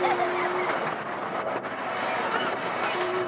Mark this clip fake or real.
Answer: real